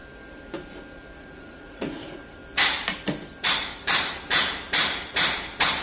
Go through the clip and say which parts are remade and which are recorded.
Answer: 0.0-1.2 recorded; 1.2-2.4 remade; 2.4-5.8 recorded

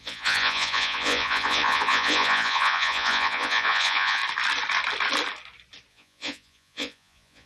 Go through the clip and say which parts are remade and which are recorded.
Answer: 0.0-4.2 remade; 4.2-5.9 recorded; 5.9-7.5 remade

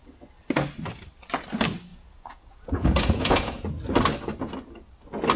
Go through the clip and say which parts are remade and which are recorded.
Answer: 0.0-1.9 recorded; 1.9-3.7 remade; 3.7-5.4 recorded

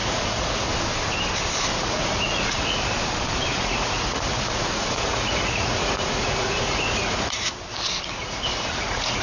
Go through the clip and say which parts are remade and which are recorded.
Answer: 0.0-0.7 remade; 0.7-1.7 recorded; 1.7-2.8 remade; 2.8-3.5 recorded; 3.5-7.5 remade; 7.5-8.2 recorded; 8.2-9.2 remade

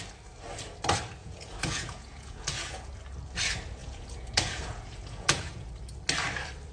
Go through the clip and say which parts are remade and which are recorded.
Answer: 0.0-1.2 recorded; 1.2-2.9 remade; 2.9-3.8 recorded; 3.8-5.7 remade; 5.7-6.7 recorded

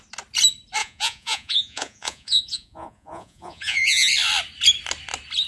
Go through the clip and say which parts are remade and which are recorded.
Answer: 0.0-0.8 recorded; 0.8-4.1 remade; 4.1-5.5 recorded

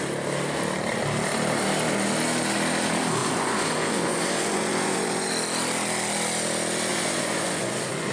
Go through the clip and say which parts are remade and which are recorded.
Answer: 0.0-3.2 recorded; 3.2-5.3 remade; 5.3-6.9 recorded; 6.9-8.1 remade